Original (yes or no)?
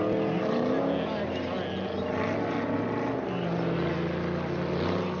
yes